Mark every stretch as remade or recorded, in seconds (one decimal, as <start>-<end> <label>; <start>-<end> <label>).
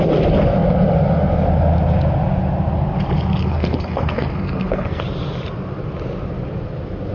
0.0-3.4 recorded; 3.4-5.0 remade; 5.0-7.1 recorded